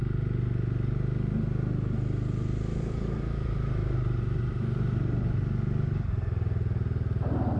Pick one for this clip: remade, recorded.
recorded